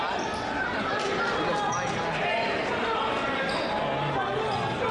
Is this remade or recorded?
recorded